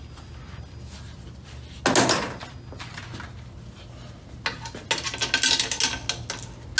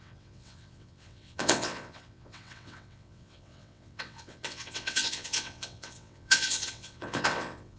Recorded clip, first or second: first